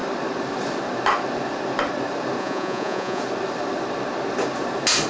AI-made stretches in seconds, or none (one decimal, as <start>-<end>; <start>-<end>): 2.4-3.2